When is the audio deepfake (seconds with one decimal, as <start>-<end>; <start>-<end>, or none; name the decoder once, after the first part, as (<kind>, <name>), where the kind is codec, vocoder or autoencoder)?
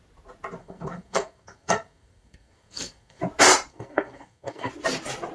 0.6-3.2 (codec, SNAC); 3.7-4.7